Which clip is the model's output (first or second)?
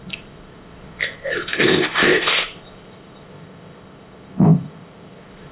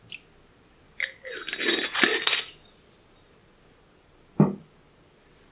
first